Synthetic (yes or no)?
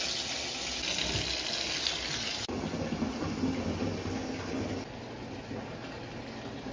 no